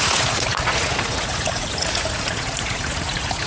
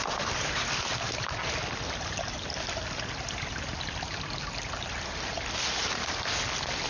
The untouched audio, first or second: second